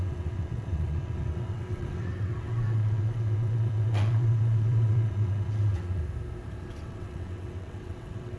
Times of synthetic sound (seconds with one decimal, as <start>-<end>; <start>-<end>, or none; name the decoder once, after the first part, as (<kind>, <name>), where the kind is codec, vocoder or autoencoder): 0.0-6.0 (vocoder, WaveNeXt); 6.6-8.4